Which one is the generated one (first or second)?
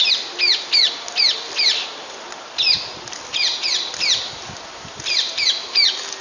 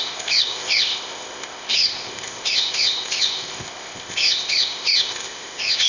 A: second